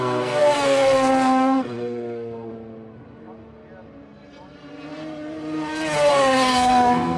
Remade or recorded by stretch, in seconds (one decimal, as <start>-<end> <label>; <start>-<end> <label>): 0.0-2.5 remade; 2.5-6.1 recorded; 6.1-7.2 remade